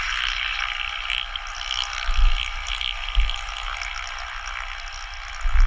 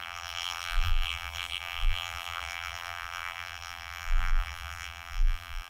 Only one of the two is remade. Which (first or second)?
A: second